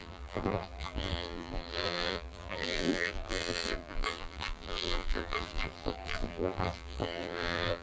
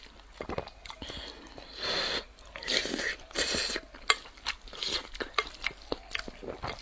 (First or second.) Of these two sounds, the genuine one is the second